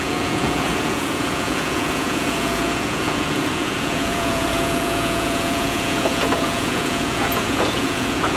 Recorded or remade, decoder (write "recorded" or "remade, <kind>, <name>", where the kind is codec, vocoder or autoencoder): remade, vocoder, Vocos